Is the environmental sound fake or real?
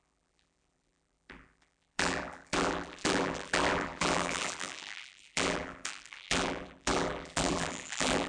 fake